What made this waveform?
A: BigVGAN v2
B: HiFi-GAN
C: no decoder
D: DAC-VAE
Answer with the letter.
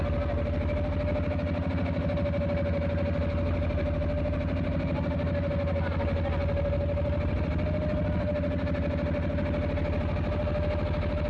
C